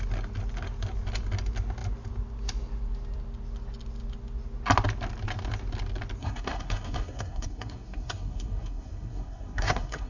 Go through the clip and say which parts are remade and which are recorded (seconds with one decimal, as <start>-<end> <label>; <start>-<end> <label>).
0.0-6.2 recorded; 6.2-10.1 remade